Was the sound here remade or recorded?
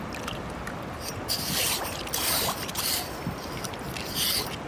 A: recorded